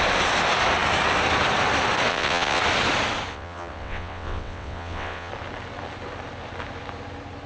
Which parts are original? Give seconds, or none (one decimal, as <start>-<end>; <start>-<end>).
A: 0.0-2.1; 2.6-3.3; 5.3-7.5